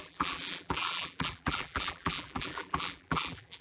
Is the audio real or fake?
fake